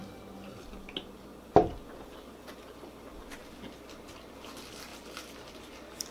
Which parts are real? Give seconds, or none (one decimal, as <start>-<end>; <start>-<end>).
0.0-6.1